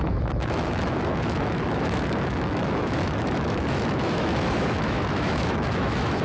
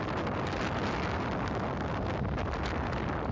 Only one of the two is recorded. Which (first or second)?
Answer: second